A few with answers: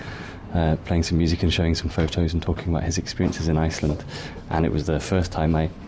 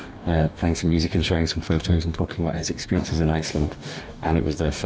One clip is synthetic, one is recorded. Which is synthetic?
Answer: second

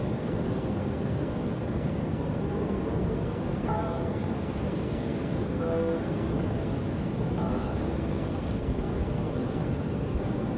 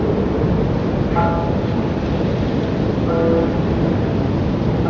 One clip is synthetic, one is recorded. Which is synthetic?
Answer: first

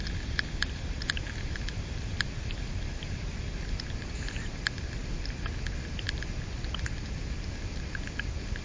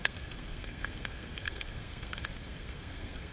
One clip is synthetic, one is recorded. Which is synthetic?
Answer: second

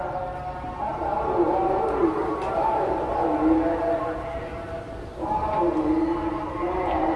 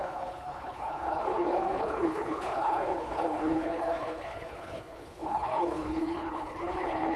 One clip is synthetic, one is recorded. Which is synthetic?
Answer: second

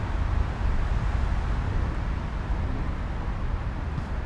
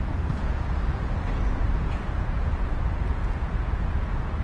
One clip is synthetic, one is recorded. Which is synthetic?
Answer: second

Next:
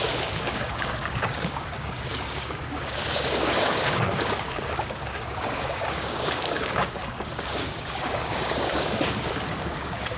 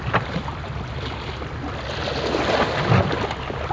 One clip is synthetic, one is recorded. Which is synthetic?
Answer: first